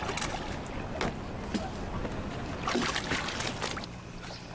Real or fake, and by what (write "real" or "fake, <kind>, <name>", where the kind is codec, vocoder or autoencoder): real